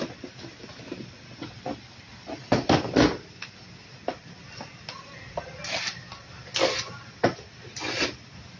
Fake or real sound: real